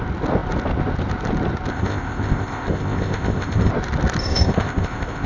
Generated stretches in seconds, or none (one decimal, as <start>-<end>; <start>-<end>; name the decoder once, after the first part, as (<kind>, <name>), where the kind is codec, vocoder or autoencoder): 1.7-3.7 (codec, ZipCodec); 4.2-5.3